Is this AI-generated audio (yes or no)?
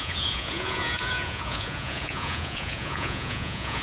yes